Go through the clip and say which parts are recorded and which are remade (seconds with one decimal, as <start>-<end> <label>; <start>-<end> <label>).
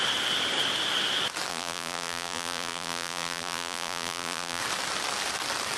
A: 0.0-1.5 recorded; 1.5-4.6 remade; 4.6-5.8 recorded